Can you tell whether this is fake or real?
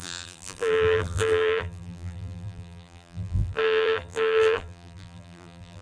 fake